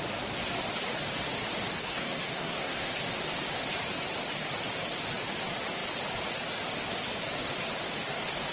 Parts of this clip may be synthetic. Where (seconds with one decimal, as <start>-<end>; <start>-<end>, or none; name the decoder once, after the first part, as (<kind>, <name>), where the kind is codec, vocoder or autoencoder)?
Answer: 1.9-2.9 (codec, SNAC)